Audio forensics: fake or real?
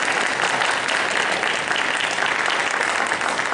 real